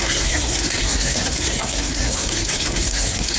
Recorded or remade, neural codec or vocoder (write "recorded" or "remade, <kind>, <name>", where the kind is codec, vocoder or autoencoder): remade, codec, SNAC